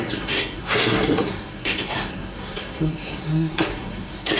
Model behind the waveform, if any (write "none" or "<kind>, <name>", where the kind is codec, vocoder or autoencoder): codec, SNAC